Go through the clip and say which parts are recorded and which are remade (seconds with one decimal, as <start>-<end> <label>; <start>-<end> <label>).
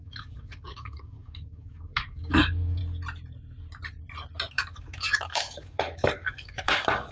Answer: 0.0-2.8 remade; 2.8-4.5 recorded; 4.5-7.1 remade